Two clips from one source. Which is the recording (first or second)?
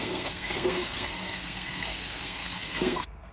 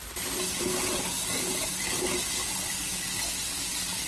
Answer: second